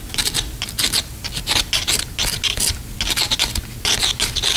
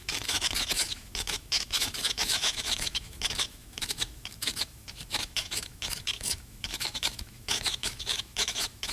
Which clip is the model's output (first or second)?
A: second